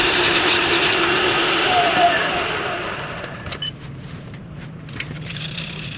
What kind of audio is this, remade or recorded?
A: remade